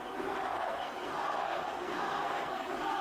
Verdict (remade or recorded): remade